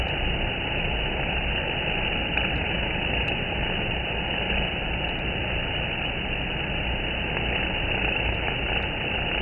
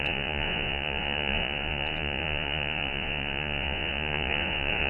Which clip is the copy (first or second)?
second